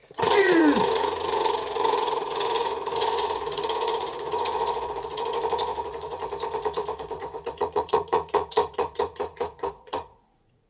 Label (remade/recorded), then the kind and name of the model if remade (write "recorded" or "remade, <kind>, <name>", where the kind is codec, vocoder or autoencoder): remade, vocoder, Vocos